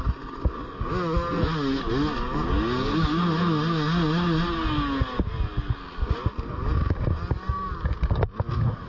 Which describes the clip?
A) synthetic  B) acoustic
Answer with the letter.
B